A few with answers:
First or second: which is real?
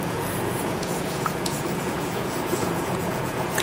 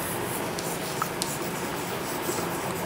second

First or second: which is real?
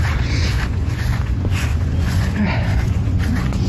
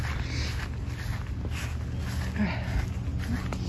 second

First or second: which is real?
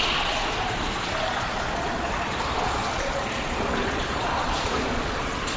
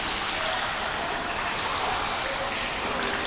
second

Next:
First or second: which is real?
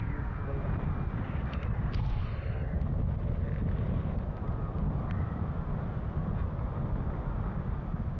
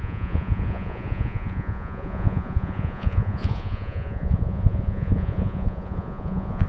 first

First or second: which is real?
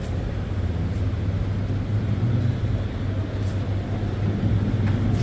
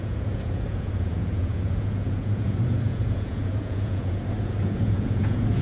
first